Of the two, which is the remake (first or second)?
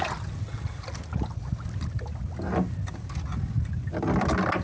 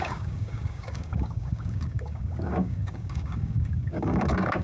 second